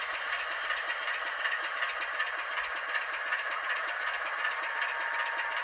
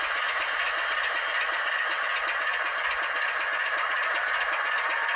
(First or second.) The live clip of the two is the second